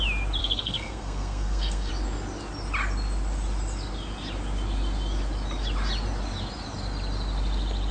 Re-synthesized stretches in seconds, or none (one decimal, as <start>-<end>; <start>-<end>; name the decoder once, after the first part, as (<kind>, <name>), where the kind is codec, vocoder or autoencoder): 0.4-1.9 (codec, SNAC)